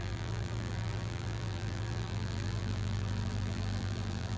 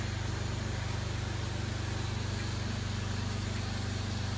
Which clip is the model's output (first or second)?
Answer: first